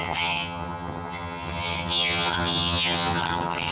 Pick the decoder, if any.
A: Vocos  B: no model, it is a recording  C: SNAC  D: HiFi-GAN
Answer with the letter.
D